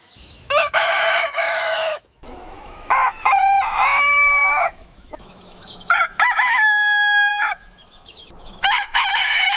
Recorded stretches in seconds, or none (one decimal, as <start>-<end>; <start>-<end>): none